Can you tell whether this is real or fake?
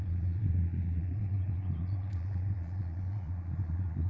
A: fake